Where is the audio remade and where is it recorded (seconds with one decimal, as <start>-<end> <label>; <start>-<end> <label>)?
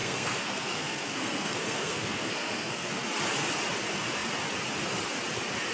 0.0-2.9 remade; 2.9-5.7 recorded